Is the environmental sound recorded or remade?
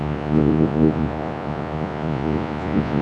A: remade